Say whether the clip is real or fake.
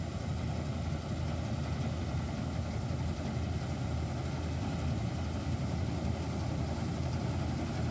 real